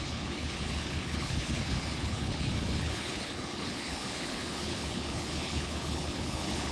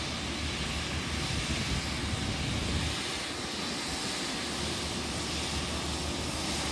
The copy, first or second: first